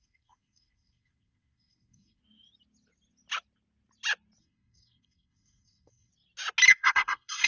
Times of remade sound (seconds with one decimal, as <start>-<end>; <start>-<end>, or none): 0.0-2.2; 4.4-6.1; 6.7-7.5